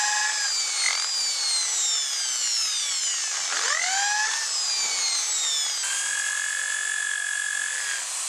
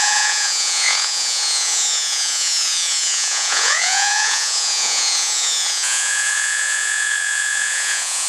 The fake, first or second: second